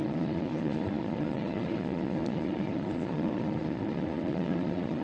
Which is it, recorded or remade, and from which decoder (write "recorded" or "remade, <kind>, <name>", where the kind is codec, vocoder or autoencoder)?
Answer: remade, vocoder, Vocos